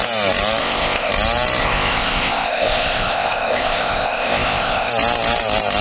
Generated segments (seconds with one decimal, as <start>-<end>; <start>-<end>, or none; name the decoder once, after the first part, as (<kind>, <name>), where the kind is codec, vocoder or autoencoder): 0.6-1.1 (codec, ZipCodec); 1.6-4.9